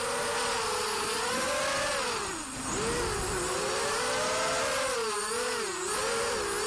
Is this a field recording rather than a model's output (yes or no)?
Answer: yes